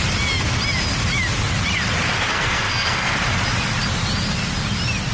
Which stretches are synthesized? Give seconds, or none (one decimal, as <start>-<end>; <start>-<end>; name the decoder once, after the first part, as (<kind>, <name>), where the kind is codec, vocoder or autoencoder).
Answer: 2.3-3.1 (codec, SNAC)